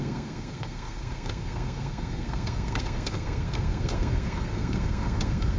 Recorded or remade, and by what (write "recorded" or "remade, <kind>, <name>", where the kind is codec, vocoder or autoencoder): remade, codec, SNAC